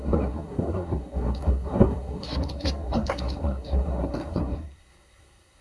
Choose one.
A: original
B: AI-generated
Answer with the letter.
B